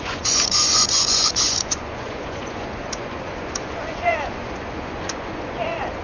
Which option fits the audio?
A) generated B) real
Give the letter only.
A